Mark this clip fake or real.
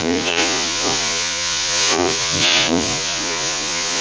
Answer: fake